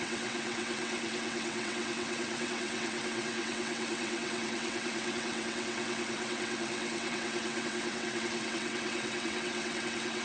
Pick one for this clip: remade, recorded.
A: remade